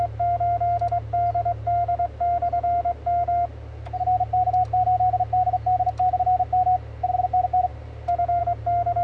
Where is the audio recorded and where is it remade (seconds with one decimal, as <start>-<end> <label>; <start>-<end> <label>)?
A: 0.0-9.0 recorded